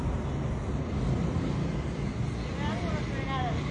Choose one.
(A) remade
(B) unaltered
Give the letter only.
B